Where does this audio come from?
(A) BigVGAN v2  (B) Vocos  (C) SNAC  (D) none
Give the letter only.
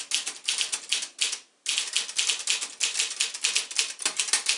D